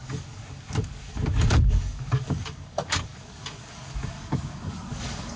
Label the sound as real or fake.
fake